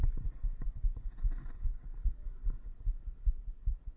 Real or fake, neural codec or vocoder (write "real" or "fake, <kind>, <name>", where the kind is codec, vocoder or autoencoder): real